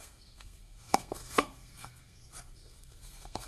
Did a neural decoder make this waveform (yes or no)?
yes